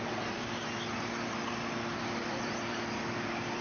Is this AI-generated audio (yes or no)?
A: yes